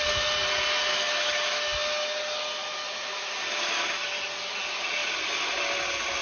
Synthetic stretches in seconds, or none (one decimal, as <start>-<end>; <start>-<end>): 0.9-1.6; 2.6-3.3